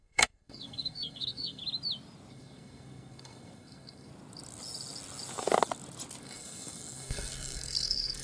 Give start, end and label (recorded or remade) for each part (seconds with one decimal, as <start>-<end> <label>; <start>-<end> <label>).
0.0-1.6 remade; 1.6-2.3 recorded; 2.3-4.1 remade; 4.1-6.2 recorded; 6.2-8.2 remade